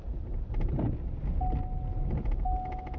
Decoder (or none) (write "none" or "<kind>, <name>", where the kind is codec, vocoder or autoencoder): none